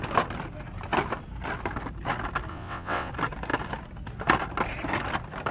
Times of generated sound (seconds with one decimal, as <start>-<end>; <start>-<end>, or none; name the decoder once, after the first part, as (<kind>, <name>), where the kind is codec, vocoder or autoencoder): 2.5-3.1 (vocoder, WaveNeXt)